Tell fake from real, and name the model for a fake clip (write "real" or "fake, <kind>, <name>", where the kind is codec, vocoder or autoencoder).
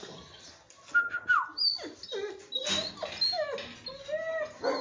real